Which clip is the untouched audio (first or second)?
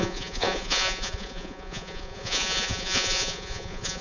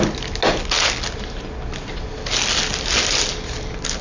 second